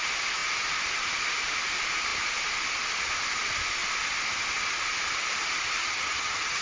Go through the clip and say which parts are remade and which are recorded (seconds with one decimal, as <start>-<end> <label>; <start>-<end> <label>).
0.0-5.8 recorded; 5.8-6.6 remade

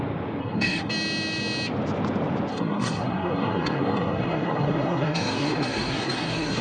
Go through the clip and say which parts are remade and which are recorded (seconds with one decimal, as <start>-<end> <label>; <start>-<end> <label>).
0.0-0.4 recorded; 0.4-0.9 remade; 0.9-2.5 recorded; 2.5-6.6 remade

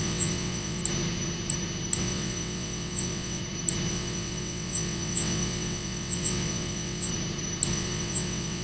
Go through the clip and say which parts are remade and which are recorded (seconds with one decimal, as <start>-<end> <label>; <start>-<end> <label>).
0.0-0.8 remade; 0.8-2.0 recorded; 2.0-3.4 remade; 3.4-3.9 recorded; 3.9-7.1 remade; 7.1-7.7 recorded; 7.7-8.6 remade